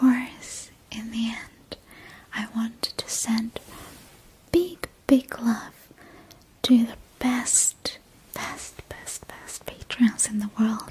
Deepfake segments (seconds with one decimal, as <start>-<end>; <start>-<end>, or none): 8.3-9.6